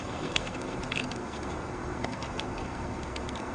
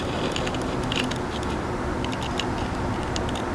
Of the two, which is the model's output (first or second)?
first